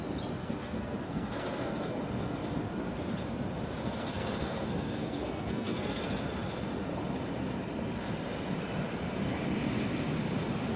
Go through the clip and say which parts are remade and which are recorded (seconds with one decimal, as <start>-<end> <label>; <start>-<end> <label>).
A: 0.0-0.4 recorded; 0.4-2.0 remade; 2.0-3.8 recorded; 3.8-6.2 remade; 6.2-10.8 recorded

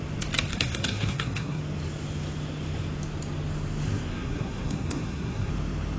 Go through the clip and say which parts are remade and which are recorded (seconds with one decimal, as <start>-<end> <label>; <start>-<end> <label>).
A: 0.0-0.5 recorded; 0.5-1.6 remade; 1.6-4.1 recorded; 4.1-5.5 remade; 5.5-6.0 recorded

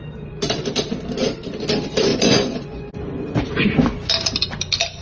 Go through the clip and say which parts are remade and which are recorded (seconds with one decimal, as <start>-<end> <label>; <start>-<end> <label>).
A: 0.0-2.1 recorded; 2.1-2.9 remade; 2.9-5.0 recorded

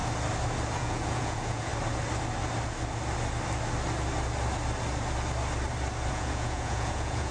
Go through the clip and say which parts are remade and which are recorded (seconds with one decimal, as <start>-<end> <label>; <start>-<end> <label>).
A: 0.0-0.7 recorded; 0.7-1.7 remade; 1.7-6.1 recorded; 6.1-7.3 remade